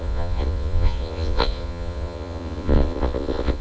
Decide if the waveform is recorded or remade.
remade